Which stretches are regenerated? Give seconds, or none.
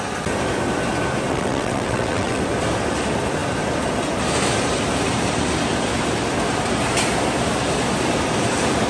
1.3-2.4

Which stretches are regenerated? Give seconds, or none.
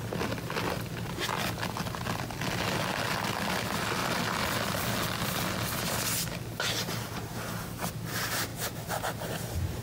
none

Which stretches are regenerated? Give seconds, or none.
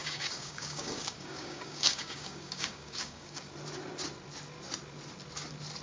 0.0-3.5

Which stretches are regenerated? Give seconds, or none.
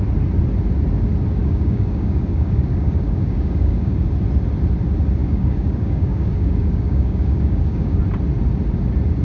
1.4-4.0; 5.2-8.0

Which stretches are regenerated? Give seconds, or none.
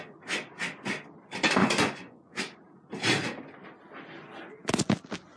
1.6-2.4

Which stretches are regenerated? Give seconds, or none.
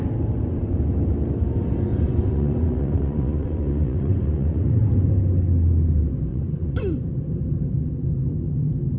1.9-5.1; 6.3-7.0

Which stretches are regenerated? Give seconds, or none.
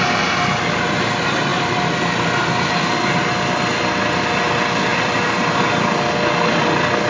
1.5-2.0; 4.9-5.6